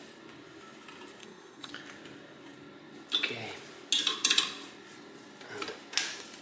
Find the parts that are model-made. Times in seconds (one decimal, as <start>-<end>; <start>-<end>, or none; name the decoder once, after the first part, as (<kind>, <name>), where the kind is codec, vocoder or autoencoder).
1.2-1.7 (codec, SNAC)